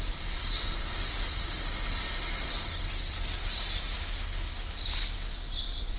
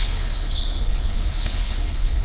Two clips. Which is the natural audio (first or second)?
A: first